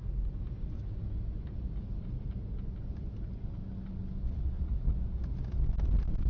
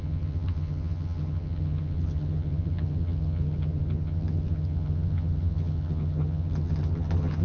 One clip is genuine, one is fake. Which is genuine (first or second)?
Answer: first